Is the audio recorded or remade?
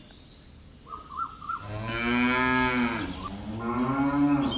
recorded